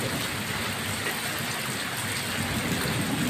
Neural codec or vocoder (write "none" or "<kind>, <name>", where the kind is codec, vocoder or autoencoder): none